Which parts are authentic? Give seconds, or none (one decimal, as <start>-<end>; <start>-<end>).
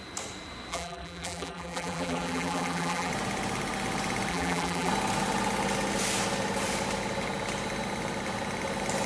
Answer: 0.0-0.7; 3.1-4.3; 4.9-9.1